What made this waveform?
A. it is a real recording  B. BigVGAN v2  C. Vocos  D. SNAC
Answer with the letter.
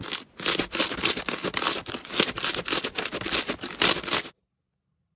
A